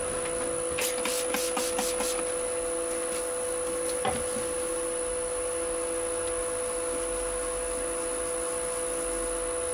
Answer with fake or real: real